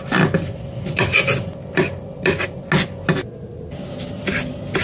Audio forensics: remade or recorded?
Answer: recorded